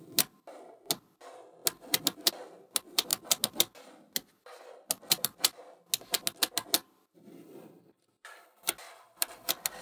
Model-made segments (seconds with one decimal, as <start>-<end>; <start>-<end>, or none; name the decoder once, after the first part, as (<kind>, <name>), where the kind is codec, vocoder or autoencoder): none